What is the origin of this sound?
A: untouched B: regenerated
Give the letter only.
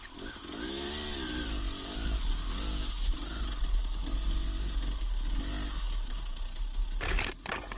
A